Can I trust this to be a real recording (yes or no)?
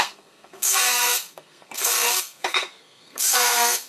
no